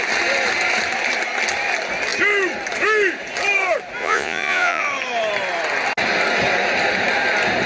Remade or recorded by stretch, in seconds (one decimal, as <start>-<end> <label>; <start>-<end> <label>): 0.0-4.0 recorded; 4.0-4.8 remade; 4.8-7.7 recorded